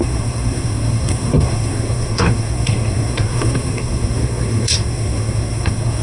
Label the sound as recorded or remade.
remade